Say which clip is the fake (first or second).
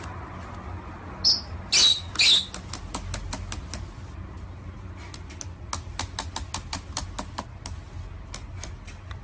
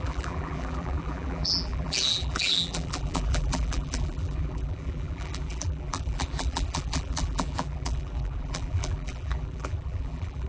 second